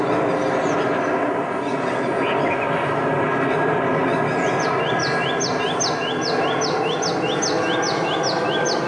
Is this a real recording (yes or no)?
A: yes